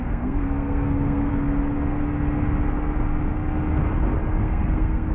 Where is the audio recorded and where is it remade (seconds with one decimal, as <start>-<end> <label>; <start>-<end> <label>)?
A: 0.0-1.3 remade; 1.3-4.4 recorded; 4.4-5.1 remade